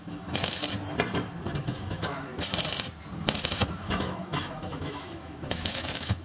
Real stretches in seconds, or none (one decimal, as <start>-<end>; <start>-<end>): 0.6-1.6; 2.3-3.7